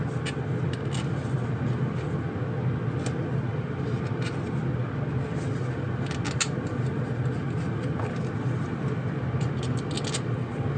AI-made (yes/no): no